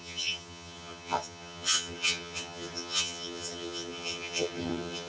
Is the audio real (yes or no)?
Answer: no